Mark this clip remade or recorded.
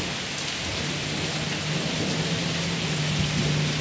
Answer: recorded